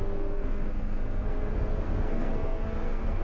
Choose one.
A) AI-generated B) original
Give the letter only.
A